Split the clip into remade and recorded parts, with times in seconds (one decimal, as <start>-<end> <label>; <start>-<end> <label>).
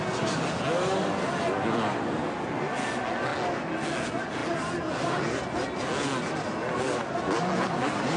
0.0-8.2 recorded